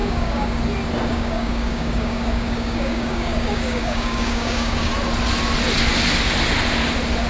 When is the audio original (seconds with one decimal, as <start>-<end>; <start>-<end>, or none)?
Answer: 0.6-1.1; 4.9-7.3